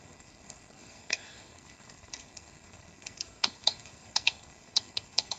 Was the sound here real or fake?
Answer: fake